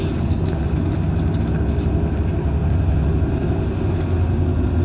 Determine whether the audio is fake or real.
real